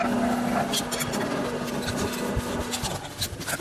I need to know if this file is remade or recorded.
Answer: recorded